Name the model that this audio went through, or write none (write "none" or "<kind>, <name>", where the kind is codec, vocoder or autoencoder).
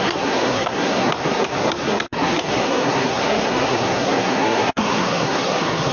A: codec, SNAC